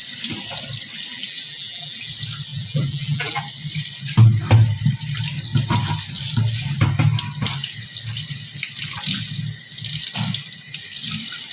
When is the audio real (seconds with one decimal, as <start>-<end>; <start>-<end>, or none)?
0.0-1.1; 2.1-2.5; 3.4-11.5